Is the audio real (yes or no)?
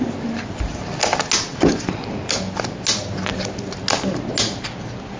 yes